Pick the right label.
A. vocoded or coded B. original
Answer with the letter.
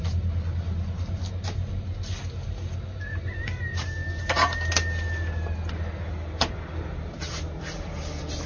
B